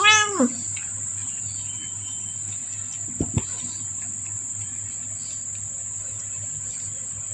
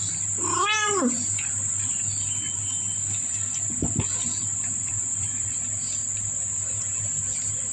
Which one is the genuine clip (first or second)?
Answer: first